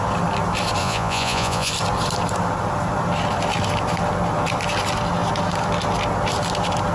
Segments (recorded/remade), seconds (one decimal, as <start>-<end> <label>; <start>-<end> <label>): 0.0-0.8 recorded; 0.8-1.7 remade; 1.7-6.9 recorded

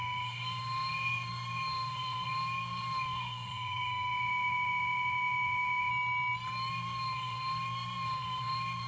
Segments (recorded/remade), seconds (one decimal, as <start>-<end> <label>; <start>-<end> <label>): 0.0-5.9 remade; 5.9-6.7 recorded; 6.7-8.9 remade